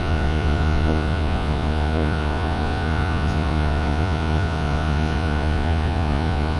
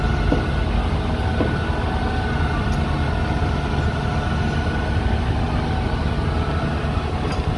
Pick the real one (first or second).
second